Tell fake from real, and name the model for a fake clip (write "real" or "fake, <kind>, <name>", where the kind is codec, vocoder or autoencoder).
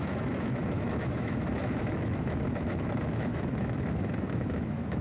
fake, autoencoder, DAC-VAE